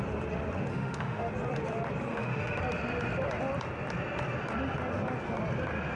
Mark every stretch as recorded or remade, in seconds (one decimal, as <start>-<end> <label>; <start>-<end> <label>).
0.0-0.7 recorded; 0.7-1.3 remade; 1.3-2.1 recorded; 2.1-2.6 remade; 2.6-6.0 recorded